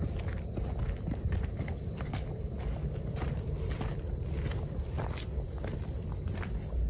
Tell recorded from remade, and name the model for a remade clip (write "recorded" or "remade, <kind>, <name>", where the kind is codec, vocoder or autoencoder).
recorded